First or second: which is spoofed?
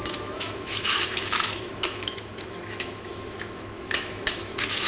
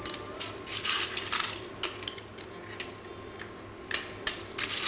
first